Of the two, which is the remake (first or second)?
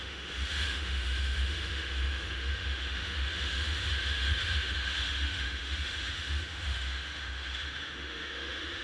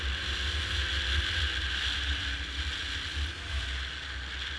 first